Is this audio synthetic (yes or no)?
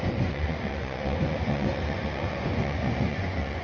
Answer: yes